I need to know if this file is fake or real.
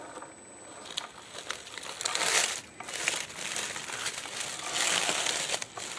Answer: real